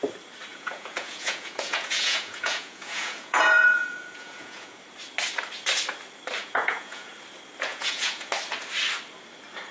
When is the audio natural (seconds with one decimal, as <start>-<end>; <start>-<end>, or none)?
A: 0.0-0.5; 4.8-6.4; 7.1-7.7; 8.3-9.7